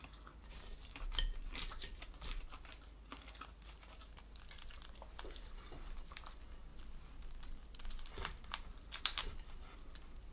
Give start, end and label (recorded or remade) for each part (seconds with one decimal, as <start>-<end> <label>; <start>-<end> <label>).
0.0-10.3 recorded